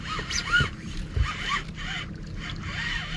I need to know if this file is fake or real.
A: real